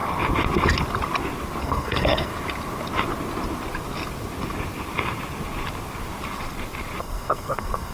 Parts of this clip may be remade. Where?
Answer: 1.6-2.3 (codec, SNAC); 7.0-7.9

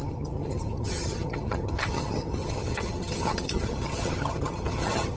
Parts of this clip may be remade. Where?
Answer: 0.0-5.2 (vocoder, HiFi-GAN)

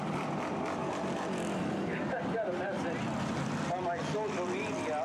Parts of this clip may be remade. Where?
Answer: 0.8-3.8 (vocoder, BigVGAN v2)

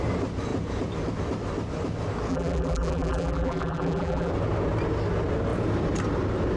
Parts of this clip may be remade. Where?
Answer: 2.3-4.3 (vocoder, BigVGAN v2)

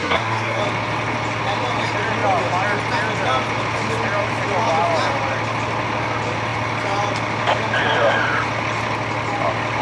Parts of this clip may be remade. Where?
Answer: 0.0-0.6 (codec, SNAC)

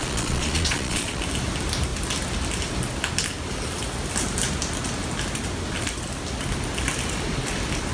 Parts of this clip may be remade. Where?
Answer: 0.0-1.2 (vocoder, Vocos)